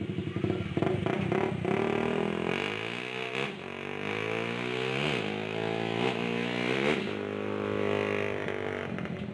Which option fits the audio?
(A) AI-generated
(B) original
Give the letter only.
B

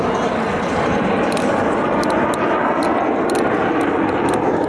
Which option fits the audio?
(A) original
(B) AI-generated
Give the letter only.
A